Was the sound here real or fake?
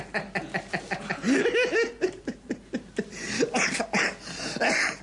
real